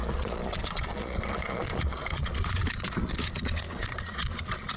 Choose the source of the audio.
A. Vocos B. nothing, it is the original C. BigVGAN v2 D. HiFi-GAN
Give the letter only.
A